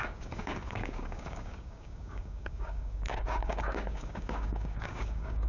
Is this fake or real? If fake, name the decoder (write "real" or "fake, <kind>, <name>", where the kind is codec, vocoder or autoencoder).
fake, codec, DAC